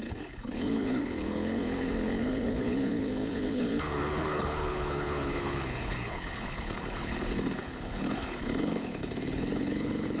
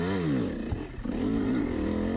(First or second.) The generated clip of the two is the first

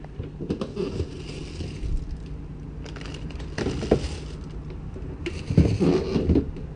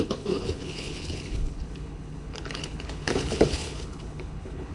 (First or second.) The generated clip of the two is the second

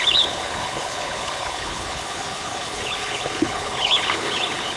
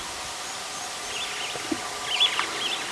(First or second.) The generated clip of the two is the first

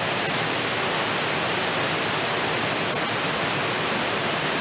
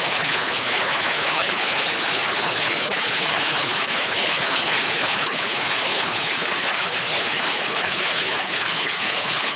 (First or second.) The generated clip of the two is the second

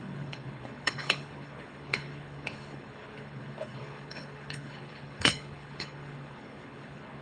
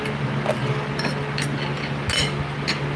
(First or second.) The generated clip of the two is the first